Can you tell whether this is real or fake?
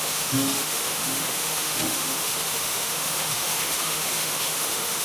fake